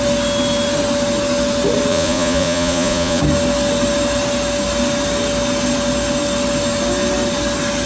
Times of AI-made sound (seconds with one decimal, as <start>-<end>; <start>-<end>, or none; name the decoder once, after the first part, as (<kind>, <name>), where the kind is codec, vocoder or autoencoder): 1.9-3.2 (vocoder, Vocos)